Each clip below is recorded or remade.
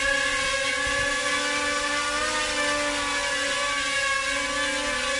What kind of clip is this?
recorded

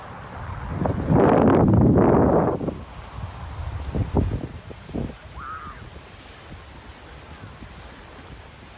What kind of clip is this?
recorded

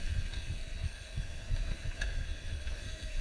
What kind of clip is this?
remade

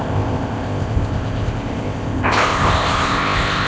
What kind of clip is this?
remade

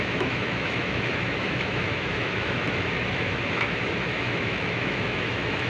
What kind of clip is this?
remade